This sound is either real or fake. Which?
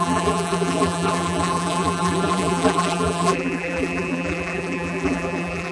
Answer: fake